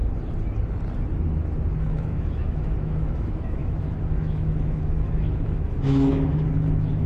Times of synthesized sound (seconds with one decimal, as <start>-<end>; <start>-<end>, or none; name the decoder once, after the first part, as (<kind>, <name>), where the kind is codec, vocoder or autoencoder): 1.8-7.1 (autoencoder, DAC-VAE)